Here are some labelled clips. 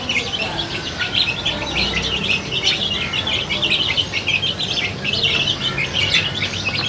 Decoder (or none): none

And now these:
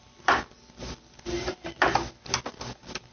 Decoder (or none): none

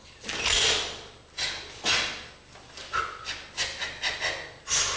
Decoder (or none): none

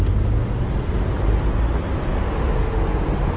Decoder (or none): none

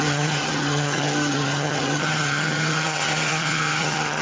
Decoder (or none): vocoder, HiFi-GAN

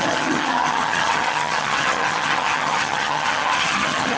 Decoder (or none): vocoder, HiFi-GAN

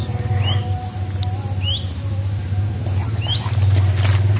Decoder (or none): none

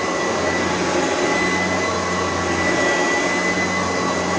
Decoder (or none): none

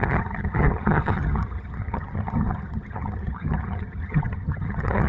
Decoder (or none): vocoder, HiFi-GAN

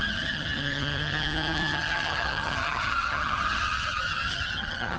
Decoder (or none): vocoder, HiFi-GAN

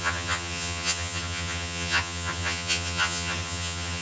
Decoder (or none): vocoder, HiFi-GAN